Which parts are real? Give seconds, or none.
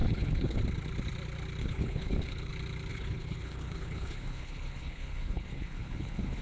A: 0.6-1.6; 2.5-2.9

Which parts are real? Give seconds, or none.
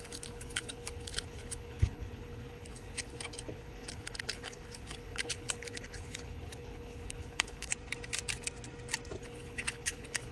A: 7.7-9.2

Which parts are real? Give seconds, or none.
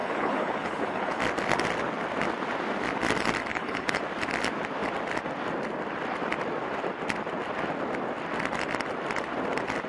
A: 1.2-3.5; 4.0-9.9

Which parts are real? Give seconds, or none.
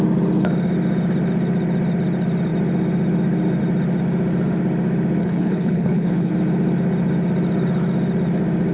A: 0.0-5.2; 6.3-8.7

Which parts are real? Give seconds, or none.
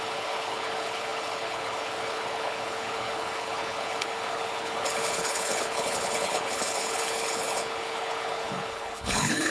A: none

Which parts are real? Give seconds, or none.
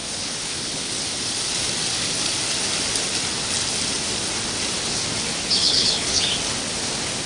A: 0.9-5.6; 6.2-7.3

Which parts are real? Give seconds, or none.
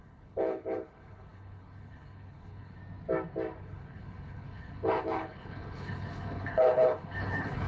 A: 2.8-3.6